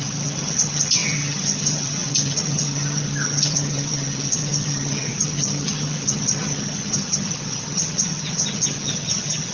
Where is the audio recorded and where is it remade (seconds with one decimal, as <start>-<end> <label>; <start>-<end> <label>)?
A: 0.0-9.5 remade